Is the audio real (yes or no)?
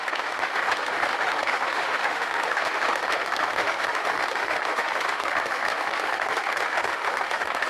no